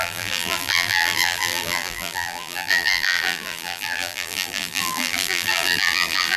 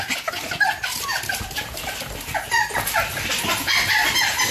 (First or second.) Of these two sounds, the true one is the second